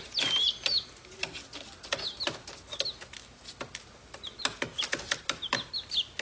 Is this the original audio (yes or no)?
yes